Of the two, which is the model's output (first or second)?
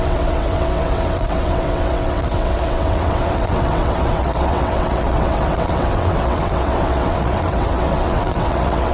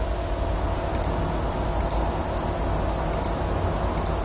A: first